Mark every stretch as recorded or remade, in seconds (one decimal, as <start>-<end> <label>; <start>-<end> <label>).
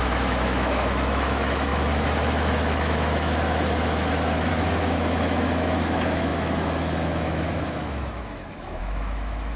0.0-9.6 remade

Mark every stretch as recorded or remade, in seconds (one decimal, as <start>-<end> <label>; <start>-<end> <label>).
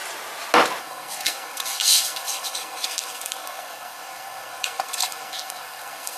0.0-0.8 recorded; 0.8-6.2 remade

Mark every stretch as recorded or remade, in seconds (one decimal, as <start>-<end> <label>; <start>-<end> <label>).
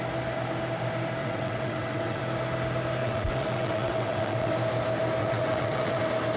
0.0-1.2 recorded; 1.2-2.2 remade; 2.2-3.0 recorded; 3.0-4.5 remade; 4.5-5.2 recorded; 5.2-6.0 remade; 6.0-6.4 recorded